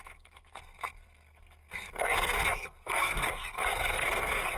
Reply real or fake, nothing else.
fake